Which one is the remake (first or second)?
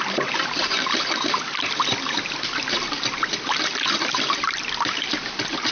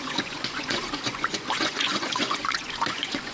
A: second